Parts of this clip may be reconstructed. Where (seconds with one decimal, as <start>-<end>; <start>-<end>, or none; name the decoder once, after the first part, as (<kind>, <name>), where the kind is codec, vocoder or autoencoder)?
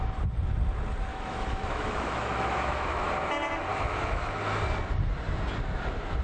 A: 1.1-3.1 (autoencoder, DAC-VAE); 3.7-4.4